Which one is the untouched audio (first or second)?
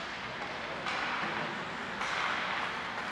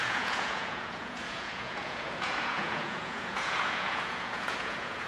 first